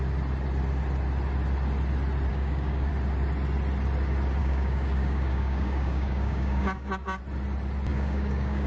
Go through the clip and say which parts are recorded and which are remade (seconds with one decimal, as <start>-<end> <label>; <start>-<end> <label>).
0.0-2.3 recorded; 2.3-2.9 remade; 2.9-4.4 recorded; 4.4-7.2 remade; 7.2-7.9 recorded; 7.9-8.7 remade